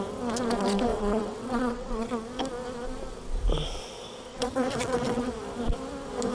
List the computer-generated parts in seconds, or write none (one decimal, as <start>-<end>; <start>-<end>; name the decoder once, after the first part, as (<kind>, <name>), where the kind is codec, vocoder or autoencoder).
0.9-2.1 (vocoder, WaveNeXt); 4.3-5.3